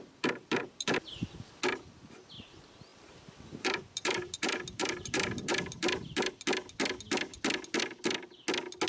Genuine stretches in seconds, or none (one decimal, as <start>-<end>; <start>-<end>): 0.0-0.4; 1.0-2.9; 6.3-8.9